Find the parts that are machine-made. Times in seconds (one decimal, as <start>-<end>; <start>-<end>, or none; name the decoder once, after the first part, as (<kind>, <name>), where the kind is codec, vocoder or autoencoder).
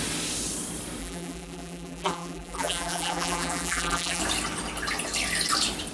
1.0-4.2 (vocoder, BigVGAN v2)